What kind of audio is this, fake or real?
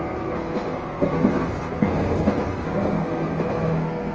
fake